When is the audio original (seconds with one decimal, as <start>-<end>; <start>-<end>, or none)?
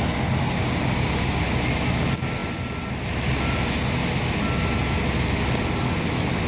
0.0-6.5